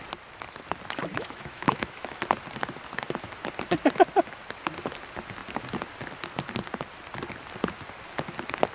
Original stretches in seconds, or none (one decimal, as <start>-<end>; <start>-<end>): 0.0-1.1; 2.2-8.7